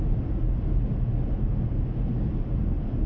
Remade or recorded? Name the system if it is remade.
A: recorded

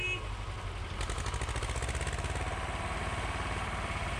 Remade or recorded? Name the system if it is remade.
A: recorded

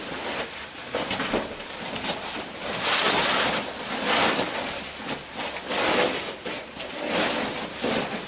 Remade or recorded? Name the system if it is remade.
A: recorded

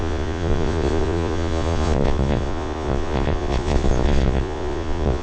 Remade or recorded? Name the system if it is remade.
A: remade, vocoder, Vocos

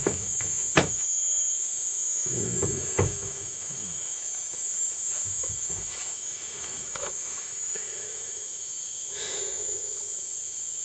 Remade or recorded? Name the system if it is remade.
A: remade, autoencoder, DAC-VAE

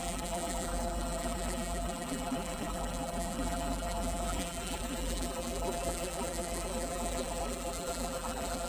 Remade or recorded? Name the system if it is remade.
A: remade, vocoder, BigVGAN v2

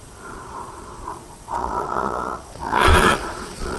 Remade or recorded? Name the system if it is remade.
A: remade, vocoder, Vocos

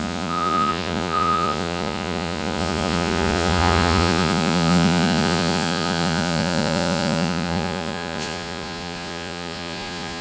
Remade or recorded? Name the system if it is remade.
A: remade, vocoder, Vocos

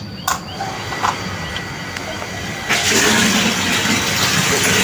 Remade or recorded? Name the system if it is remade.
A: recorded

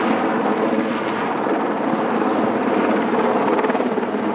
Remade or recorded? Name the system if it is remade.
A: recorded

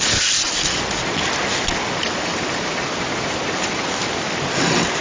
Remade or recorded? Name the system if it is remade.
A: recorded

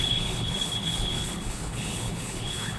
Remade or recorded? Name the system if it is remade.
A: remade, codec, HILCodec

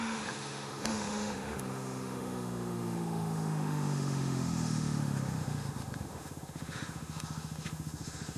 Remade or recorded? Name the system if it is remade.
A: remade, autoencoder, DAC-VAE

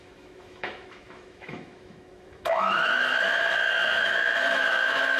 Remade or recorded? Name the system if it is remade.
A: remade, autoencoder, DAC-VAE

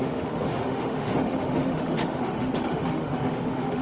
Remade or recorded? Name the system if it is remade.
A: remade, autoencoder, DAC-VAE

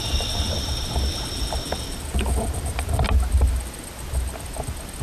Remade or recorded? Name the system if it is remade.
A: recorded